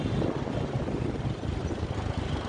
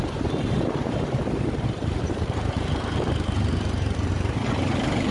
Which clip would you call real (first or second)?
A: first